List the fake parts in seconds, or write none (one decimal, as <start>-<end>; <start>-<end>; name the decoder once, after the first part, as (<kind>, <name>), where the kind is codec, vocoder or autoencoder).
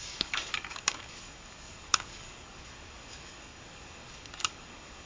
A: 0.0-5.1 (codec, DAC)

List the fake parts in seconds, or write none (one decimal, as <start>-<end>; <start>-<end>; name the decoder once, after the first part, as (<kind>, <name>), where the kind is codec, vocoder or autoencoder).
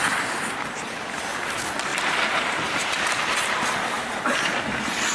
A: 1.9-5.1 (vocoder, BigVGAN v2)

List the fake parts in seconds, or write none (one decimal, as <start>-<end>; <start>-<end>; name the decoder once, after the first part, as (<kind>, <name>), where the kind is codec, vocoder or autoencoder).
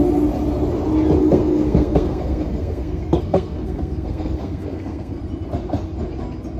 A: 1.2-5.2 (codec, SNAC)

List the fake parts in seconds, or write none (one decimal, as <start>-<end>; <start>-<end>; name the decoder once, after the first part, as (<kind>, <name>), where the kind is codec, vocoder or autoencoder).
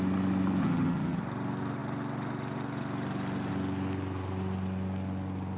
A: 0.6-1.2 (vocoder, HiFi-GAN)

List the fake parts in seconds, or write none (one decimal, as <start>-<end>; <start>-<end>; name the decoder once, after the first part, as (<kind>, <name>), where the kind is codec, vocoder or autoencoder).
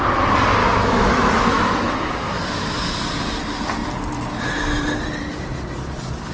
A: 0.6-2.9 (autoencoder, DAC-VAE)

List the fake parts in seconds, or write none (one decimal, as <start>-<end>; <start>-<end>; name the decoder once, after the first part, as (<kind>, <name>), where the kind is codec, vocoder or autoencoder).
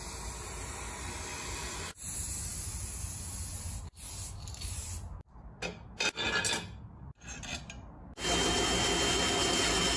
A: none